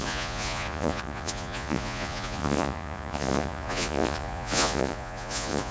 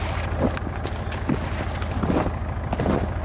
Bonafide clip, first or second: second